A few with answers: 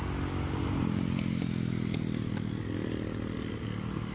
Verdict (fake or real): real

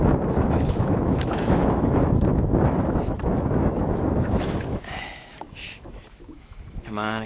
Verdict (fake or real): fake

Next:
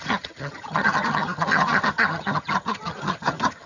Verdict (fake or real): fake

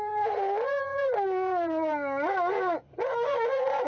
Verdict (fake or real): fake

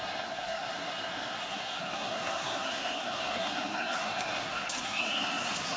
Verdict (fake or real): fake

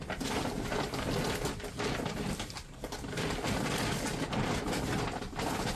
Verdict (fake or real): real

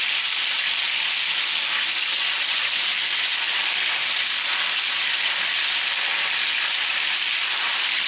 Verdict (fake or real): real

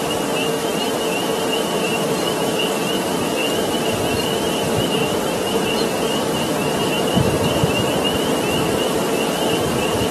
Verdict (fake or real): real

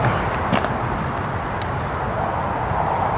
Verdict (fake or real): real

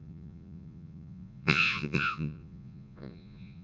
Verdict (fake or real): fake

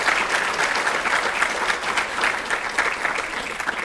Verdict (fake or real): real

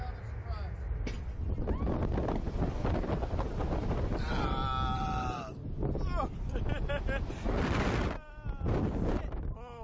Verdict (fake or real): real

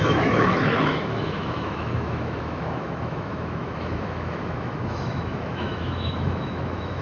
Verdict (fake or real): fake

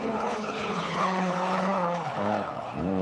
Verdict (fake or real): fake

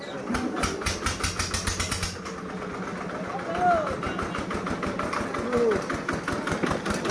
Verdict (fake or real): real